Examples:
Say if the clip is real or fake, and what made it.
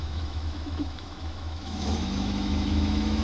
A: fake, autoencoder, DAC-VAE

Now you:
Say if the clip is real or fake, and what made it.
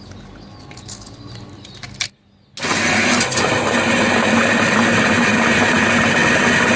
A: real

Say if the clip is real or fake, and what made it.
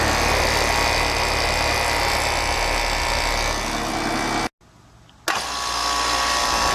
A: real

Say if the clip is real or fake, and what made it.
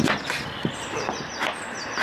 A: real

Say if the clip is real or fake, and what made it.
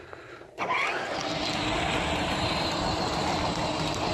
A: real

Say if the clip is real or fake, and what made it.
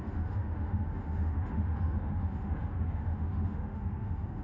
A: fake, autoencoder, DAC-VAE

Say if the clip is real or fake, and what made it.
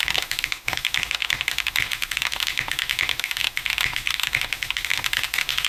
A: fake, autoencoder, DAC-VAE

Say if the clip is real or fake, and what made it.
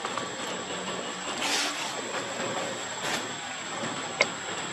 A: real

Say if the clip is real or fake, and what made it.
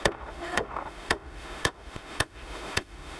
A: fake, autoencoder, DAC-VAE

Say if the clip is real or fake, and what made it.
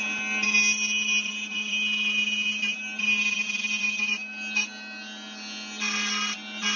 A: real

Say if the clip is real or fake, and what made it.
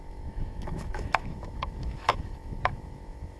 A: fake, autoencoder, DAC-VAE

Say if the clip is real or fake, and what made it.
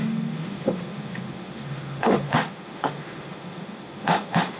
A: fake, autoencoder, DAC-VAE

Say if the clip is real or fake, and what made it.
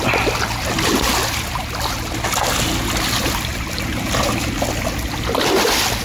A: real